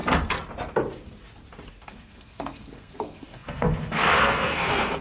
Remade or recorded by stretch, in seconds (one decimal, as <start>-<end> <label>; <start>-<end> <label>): 0.0-1.7 recorded; 1.7-5.0 remade